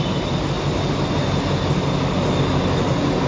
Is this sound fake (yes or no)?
no